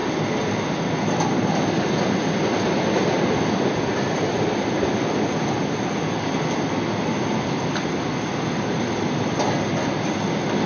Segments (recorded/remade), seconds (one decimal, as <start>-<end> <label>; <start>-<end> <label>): 0.0-10.7 recorded